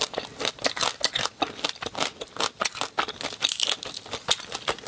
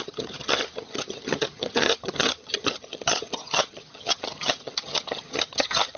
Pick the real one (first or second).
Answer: first